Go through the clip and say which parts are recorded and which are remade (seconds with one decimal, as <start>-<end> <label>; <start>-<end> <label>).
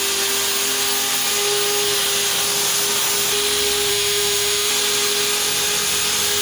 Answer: 0.0-3.9 recorded; 3.9-4.7 remade; 4.7-6.4 recorded